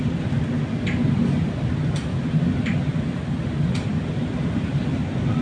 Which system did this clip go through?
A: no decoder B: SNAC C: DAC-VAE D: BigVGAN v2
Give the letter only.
A